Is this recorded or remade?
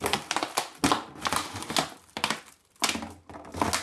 recorded